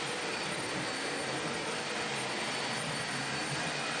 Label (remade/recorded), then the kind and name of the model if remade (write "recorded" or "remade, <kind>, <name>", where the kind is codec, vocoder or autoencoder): recorded